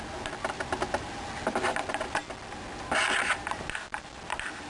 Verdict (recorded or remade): recorded